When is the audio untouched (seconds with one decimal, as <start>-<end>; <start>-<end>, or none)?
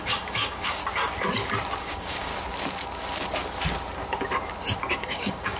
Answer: 0.8-1.8; 2.3-5.0